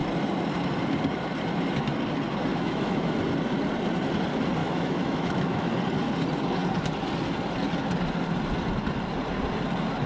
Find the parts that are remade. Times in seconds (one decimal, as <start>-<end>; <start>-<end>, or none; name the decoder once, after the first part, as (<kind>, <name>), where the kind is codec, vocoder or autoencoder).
2.5-3.1 (autoencoder, DAC-VAE); 4.6-5.7